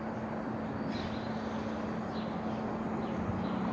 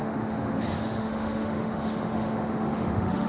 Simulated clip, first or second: second